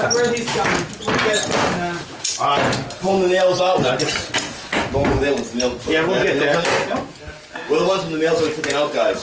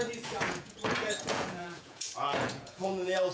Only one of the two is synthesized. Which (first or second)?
second